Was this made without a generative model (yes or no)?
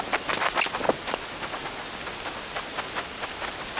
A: yes